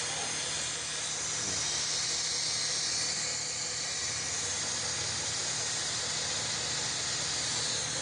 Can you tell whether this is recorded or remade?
recorded